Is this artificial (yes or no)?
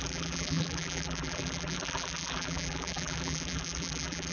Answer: yes